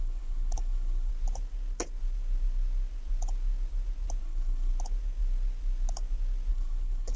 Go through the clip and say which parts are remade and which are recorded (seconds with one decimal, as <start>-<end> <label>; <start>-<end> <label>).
0.0-1.1 remade; 1.1-4.2 recorded; 4.2-4.7 remade; 4.7-6.5 recorded; 6.5-7.2 remade

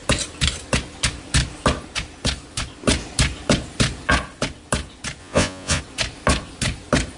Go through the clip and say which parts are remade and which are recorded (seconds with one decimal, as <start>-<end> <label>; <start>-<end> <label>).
0.0-5.2 recorded; 5.2-5.8 remade; 5.8-7.2 recorded

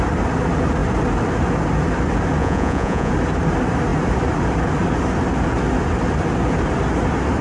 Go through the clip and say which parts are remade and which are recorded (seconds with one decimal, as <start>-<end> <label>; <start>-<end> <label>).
0.0-2.4 recorded; 2.4-3.1 remade; 3.1-7.4 recorded

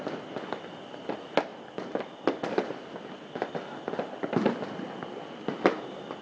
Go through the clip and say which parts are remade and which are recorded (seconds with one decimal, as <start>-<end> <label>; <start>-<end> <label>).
0.0-6.2 recorded

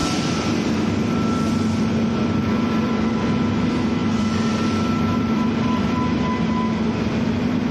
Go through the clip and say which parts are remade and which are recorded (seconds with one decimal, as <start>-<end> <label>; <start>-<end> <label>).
0.0-3.2 remade; 3.2-4.0 recorded; 4.0-6.3 remade; 6.3-7.7 recorded

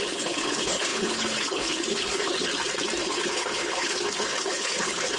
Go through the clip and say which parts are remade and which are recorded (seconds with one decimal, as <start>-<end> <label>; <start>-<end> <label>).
0.0-2.5 remade; 2.5-3.0 recorded; 3.0-5.2 remade

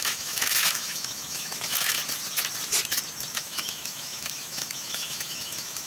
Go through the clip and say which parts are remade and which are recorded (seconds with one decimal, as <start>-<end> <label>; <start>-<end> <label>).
0.0-2.0 remade; 2.0-3.3 recorded; 3.3-5.9 remade

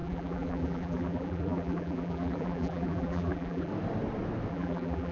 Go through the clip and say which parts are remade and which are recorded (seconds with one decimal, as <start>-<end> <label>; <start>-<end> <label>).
0.0-3.7 remade; 3.7-4.5 recorded; 4.5-5.1 remade